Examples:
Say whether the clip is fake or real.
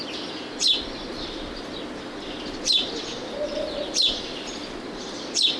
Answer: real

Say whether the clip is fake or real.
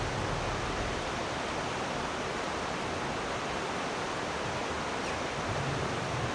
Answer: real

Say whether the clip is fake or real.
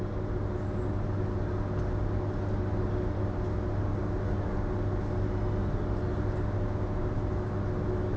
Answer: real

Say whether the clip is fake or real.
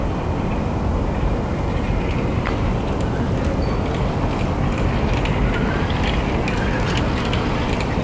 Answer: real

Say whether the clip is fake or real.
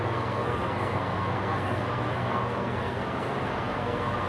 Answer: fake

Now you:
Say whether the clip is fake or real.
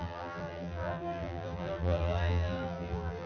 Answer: fake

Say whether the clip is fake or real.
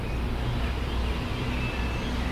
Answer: real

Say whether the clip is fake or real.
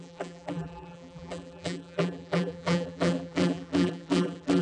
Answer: fake